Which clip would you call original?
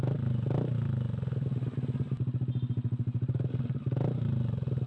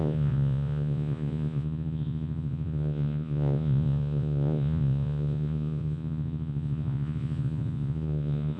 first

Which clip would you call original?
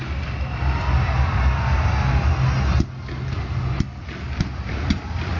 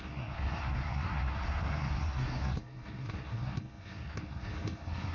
first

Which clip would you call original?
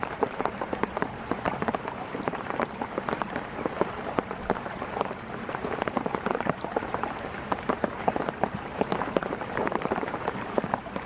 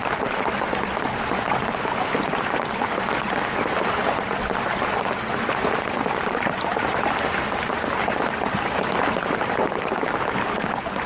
second